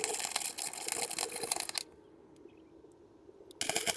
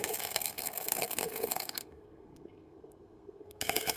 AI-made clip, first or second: second